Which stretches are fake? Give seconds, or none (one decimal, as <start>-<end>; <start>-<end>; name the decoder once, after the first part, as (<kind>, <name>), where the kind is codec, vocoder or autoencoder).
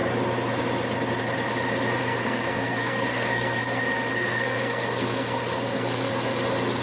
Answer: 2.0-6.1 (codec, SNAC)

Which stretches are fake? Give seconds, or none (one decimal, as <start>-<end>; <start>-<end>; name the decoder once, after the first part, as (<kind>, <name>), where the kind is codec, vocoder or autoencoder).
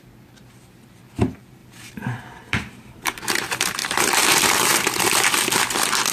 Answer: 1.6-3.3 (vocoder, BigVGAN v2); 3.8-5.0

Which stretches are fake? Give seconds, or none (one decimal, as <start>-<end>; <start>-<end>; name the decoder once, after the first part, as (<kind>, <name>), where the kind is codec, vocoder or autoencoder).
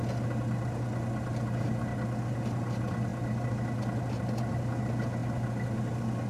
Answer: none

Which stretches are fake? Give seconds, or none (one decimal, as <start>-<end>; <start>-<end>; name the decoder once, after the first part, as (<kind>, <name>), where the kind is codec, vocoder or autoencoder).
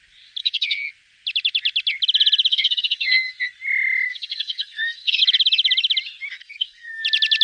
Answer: 0.4-0.9 (codec, SNAC); 2.5-3.3; 4.1-5.2; 6.4-7.0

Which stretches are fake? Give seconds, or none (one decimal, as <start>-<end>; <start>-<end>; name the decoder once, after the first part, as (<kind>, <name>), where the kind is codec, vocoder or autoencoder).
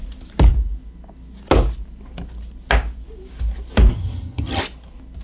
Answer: 3.9-4.6 (vocoder, HiFi-GAN)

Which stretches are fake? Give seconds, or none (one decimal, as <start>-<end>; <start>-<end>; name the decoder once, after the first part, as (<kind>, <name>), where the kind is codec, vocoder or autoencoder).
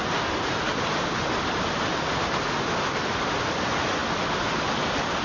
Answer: none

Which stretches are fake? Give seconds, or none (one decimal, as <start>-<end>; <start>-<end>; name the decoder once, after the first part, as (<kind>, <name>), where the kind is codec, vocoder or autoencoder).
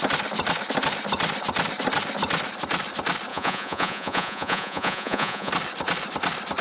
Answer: 3.3-5.5 (vocoder, Vocos)